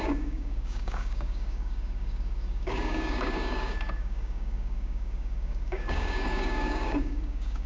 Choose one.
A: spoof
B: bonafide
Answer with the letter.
A